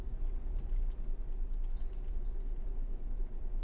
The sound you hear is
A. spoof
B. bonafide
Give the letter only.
B